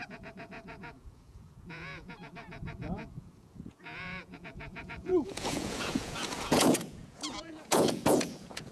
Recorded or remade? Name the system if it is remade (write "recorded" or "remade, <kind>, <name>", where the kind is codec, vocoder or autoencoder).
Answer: remade, vocoder, Vocos